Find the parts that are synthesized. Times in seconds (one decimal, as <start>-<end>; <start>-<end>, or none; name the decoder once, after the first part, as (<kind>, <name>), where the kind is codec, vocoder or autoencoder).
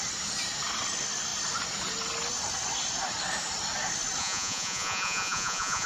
4.2-5.9 (vocoder, Vocos)